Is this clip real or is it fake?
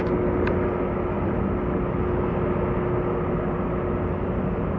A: real